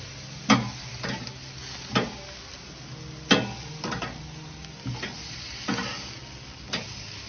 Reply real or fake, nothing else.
real